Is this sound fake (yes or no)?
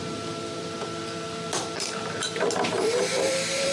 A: yes